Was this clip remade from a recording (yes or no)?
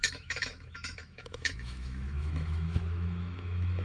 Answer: yes